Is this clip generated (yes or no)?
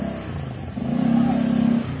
no